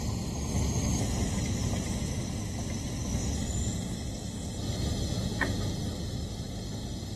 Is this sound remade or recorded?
recorded